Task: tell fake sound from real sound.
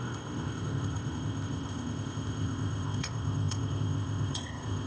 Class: fake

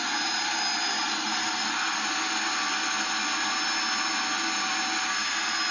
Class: real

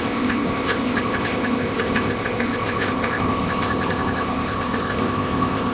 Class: fake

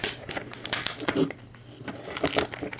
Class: real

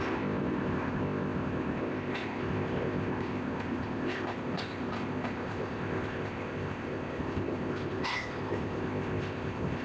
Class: fake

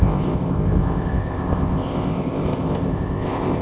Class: fake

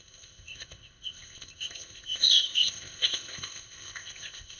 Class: fake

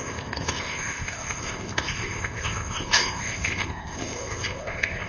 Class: fake